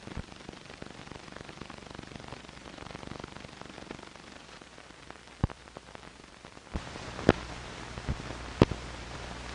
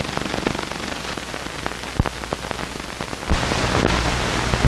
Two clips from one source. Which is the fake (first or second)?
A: first